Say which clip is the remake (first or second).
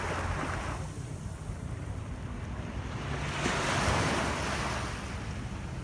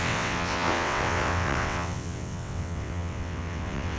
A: second